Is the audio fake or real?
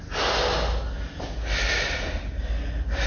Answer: real